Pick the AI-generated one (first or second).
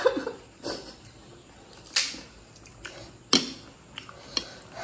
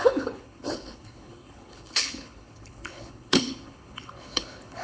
second